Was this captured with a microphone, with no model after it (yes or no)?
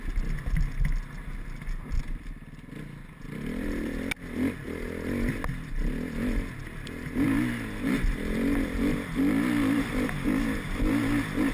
yes